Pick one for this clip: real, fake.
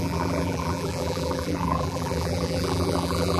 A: fake